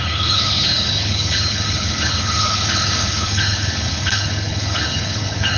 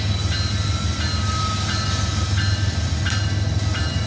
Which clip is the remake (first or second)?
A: first